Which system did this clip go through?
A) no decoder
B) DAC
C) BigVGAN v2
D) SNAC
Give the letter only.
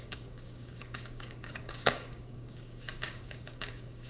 B